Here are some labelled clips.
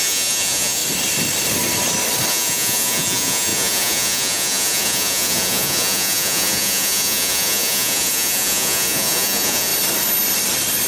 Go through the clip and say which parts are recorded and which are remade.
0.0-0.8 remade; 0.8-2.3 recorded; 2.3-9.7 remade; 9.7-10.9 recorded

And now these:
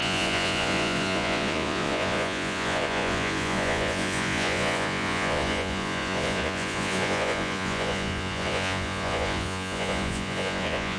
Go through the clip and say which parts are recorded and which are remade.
0.0-11.0 remade

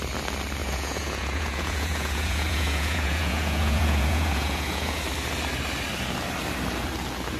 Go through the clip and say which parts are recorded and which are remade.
0.0-0.6 recorded; 0.6-5.0 remade; 5.0-7.4 recorded

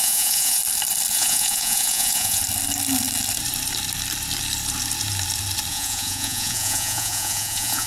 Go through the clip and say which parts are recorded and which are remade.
0.0-0.6 remade; 0.6-1.1 recorded; 1.1-2.4 remade; 2.4-5.7 recorded; 5.7-7.9 remade

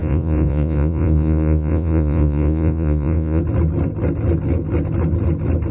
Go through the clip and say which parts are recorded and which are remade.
0.0-3.4 remade; 3.4-5.7 recorded